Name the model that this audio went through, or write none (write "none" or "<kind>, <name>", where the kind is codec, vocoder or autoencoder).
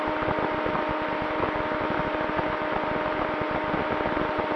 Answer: none